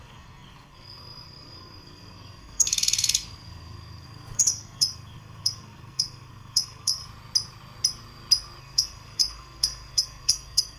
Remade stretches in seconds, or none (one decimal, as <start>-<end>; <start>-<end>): 0.0-7.0; 8.6-10.8